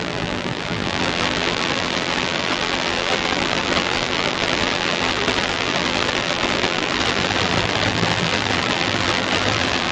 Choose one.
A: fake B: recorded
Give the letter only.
A